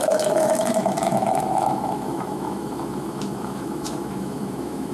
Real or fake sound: fake